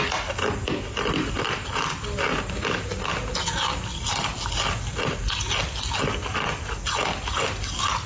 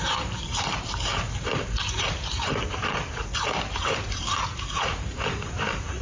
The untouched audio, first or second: first